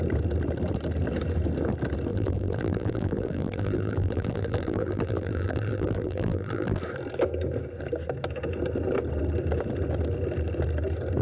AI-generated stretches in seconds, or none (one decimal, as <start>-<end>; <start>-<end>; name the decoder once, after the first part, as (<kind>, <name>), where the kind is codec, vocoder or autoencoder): 2.1-6.8 (vocoder, BigVGAN v2)